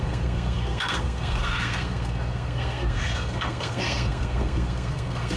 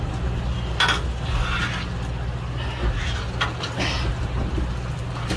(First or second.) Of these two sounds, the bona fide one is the second